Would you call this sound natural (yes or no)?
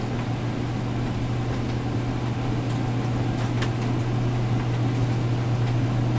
yes